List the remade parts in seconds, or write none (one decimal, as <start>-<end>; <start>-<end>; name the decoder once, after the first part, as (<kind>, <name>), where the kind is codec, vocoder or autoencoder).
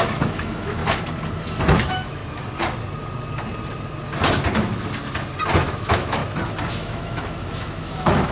0.0-0.8 (autoencoder, DAC-VAE); 1.6-2.2; 5.6-6.2; 6.7-8.3